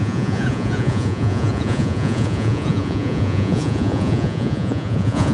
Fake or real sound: fake